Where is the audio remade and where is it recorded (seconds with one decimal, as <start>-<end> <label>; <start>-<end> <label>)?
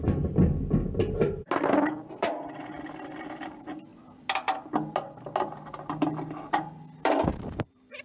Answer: 0.0-8.0 recorded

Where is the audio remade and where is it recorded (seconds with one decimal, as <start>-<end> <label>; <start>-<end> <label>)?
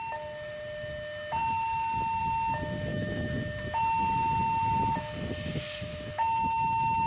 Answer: 0.0-2.9 recorded; 2.9-3.4 remade; 3.4-5.9 recorded; 5.9-7.1 remade